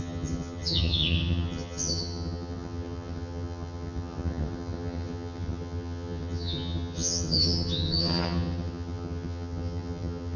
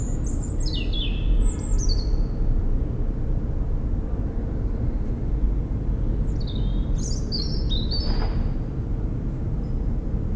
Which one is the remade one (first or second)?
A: first